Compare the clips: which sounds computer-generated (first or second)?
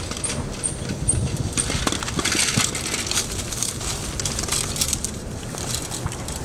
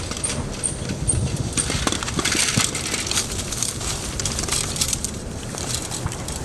second